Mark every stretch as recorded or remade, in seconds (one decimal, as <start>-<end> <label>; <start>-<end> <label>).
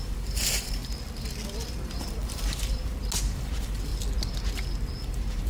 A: 0.0-0.8 remade; 0.8-2.0 recorded; 2.0-2.9 remade; 2.9-3.4 recorded; 3.4-3.9 remade; 3.9-4.9 recorded; 4.9-5.5 remade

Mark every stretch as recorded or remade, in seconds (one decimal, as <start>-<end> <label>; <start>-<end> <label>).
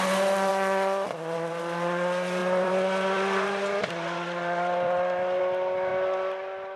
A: 0.0-0.5 recorded; 0.5-1.6 remade; 1.6-2.4 recorded; 2.4-5.4 remade; 5.4-6.8 recorded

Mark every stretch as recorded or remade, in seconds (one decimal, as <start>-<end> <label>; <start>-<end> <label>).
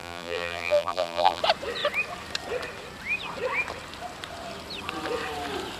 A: 0.0-1.4 remade; 1.4-5.8 recorded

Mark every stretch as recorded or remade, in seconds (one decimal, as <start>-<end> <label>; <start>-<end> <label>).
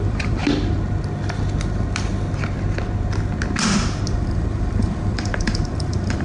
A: 0.0-0.4 remade; 0.4-4.1 recorded; 4.1-6.2 remade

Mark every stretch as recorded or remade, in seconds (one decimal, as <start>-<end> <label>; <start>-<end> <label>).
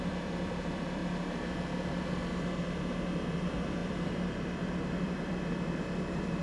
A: 0.0-1.0 remade; 1.0-3.0 recorded; 3.0-6.4 remade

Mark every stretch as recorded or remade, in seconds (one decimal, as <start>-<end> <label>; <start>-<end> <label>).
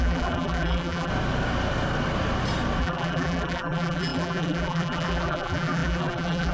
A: 0.0-1.1 remade; 1.1-2.8 recorded; 2.8-6.5 remade